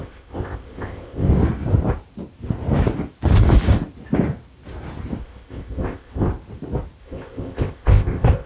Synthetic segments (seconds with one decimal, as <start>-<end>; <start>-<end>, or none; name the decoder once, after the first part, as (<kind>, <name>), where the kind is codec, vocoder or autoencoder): 0.0-1.3 (codec, ZipCodec); 5.2-6.3; 7.0-8.5